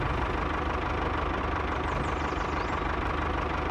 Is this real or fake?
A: real